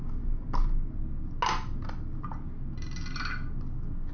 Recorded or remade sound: recorded